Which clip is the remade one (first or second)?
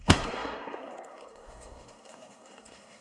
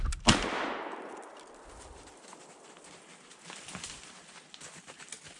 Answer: first